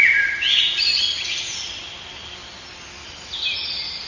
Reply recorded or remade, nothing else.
recorded